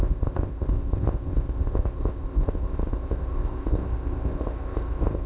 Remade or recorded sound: remade